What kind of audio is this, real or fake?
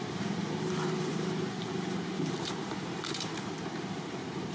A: fake